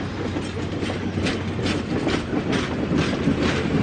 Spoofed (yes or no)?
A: no